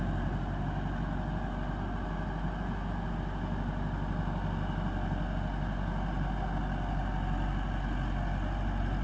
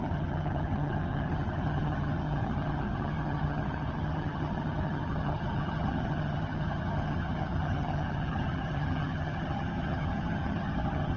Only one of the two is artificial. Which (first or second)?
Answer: second